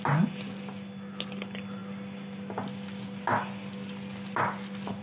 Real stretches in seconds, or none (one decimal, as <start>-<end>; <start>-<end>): 0.0-5.0